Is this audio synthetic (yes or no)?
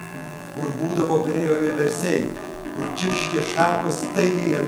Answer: yes